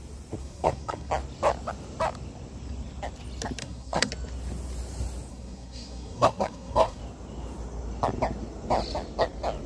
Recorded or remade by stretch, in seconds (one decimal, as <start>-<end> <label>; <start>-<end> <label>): 0.0-0.4 recorded; 0.4-1.1 remade; 1.1-3.6 recorded; 3.6-4.1 remade; 4.1-5.3 recorded; 5.3-7.0 remade; 7.0-9.7 recorded